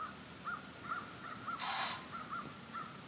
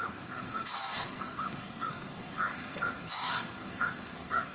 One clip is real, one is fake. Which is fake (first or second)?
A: second